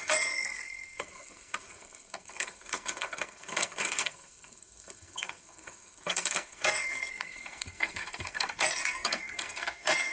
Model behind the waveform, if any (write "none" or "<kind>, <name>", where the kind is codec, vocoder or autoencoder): codec, SNAC